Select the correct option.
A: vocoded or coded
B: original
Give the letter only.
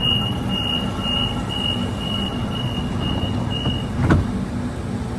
B